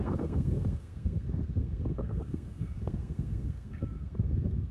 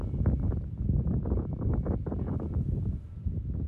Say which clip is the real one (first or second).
second